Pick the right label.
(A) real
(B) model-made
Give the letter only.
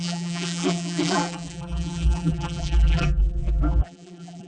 B